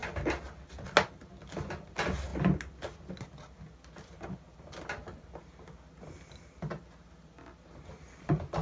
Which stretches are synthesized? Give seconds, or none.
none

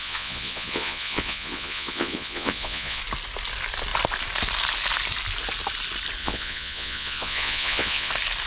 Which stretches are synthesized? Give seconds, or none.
0.0-3.0; 6.2-8.1

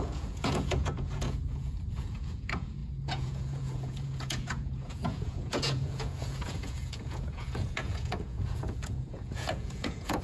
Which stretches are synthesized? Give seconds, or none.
0.0-10.2